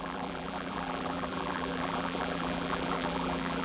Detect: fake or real fake